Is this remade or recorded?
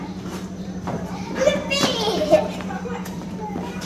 remade